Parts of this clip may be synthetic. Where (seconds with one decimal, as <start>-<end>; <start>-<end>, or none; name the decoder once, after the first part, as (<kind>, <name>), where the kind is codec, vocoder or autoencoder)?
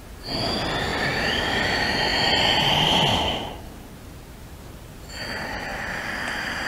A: 0.9-1.4 (vocoder, BigVGAN v2)